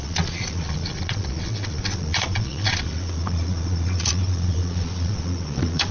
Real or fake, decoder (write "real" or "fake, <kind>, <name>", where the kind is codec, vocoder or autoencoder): fake, vocoder, Vocos